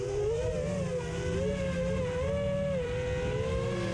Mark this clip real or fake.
real